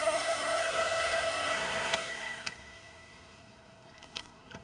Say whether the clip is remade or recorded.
remade